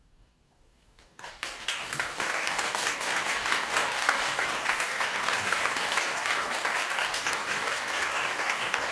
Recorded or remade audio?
remade